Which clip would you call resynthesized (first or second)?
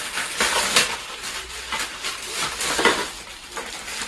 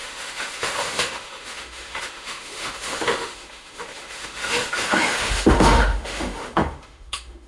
second